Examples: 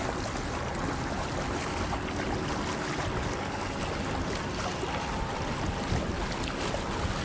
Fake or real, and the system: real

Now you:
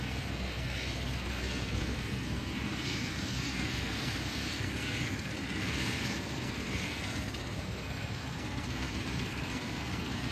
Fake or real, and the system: fake, codec, SNAC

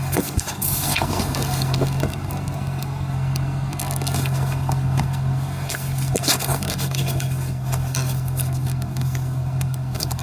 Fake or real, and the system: fake, codec, SNAC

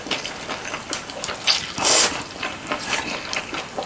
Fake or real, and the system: real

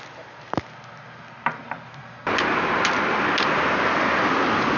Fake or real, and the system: real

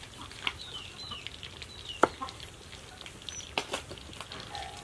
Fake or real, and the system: real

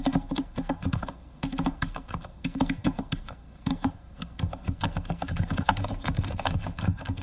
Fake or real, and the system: fake, codec, SNAC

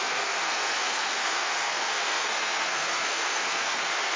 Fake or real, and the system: fake, codec, SNAC